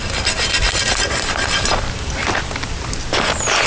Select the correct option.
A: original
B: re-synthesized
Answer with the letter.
A